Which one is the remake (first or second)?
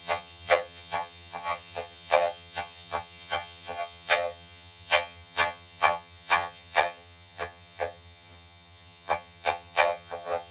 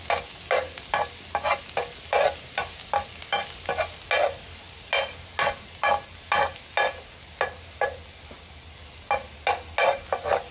first